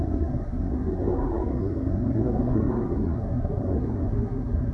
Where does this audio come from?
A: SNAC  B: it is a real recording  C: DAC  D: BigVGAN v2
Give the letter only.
A